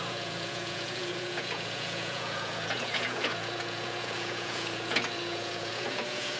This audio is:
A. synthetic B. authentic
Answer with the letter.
A